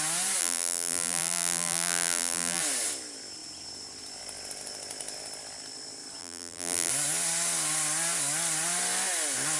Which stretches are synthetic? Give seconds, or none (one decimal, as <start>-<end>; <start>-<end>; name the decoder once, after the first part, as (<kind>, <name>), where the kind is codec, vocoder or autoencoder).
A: 0.4-2.6 (vocoder, BigVGAN v2); 6.2-6.9